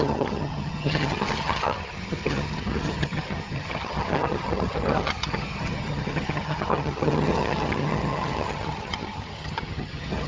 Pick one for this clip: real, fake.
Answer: fake